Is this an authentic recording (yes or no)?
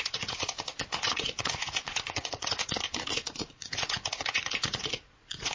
no